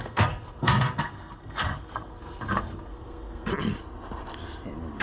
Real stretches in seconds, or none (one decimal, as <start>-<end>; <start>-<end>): 3.5-5.0